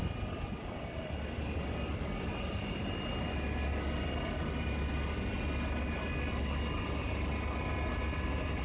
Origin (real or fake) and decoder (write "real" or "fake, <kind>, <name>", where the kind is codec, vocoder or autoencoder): real